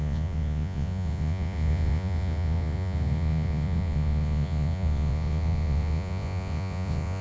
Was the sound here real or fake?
fake